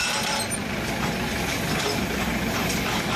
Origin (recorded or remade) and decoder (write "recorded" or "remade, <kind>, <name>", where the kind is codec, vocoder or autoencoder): recorded